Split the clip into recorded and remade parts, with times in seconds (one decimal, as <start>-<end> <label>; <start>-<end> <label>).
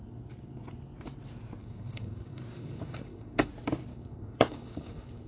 0.0-1.6 recorded; 1.6-3.5 remade; 3.5-3.9 recorded; 3.9-5.3 remade